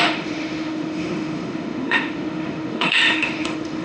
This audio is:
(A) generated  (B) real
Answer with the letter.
A